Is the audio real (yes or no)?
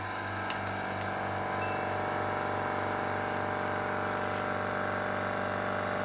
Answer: yes